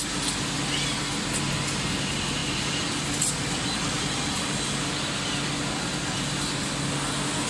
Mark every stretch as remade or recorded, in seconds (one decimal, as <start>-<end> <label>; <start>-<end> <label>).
0.0-7.5 recorded